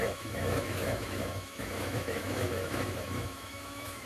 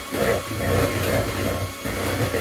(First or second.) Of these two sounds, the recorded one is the second